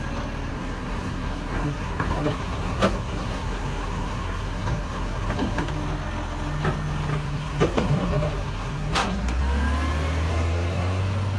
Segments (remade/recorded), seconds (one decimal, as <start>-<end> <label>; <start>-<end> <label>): 0.0-0.5 recorded; 0.5-5.7 remade; 5.7-7.1 recorded; 7.1-9.4 remade; 9.4-10.3 recorded; 10.3-11.0 remade; 11.0-11.4 recorded